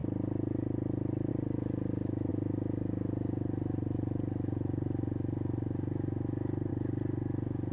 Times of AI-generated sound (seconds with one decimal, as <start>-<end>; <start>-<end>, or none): none